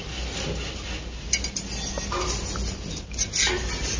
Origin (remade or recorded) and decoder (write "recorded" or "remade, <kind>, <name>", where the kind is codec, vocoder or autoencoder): recorded